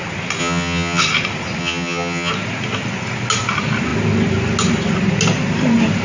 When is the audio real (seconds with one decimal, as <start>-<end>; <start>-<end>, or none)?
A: 0.0-0.4; 1.0-1.6; 2.3-6.0